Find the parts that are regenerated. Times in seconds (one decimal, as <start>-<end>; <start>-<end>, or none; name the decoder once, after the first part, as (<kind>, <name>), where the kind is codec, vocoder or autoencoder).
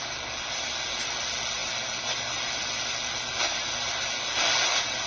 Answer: none